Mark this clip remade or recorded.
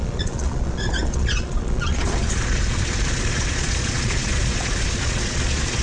remade